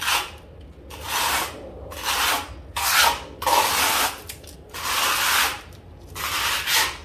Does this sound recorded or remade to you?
recorded